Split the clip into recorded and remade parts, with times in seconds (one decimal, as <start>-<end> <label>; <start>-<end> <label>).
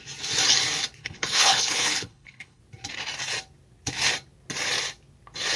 0.0-1.0 recorded; 1.0-2.6 remade; 2.6-5.6 recorded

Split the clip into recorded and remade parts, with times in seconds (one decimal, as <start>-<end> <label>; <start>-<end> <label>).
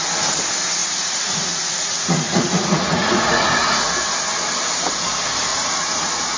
0.0-0.8 recorded; 0.8-3.9 remade; 3.9-5.5 recorded; 5.5-6.4 remade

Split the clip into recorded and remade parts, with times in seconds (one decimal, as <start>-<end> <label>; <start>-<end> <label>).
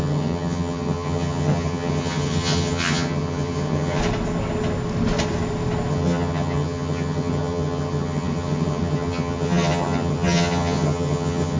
0.0-4.0 remade; 4.0-5.9 recorded; 5.9-11.6 remade